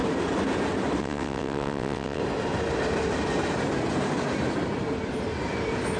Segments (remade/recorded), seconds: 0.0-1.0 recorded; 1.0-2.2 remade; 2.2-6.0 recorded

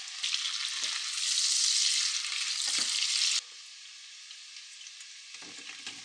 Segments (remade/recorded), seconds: 0.0-6.0 recorded

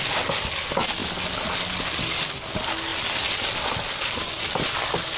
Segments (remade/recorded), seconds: 0.0-5.2 recorded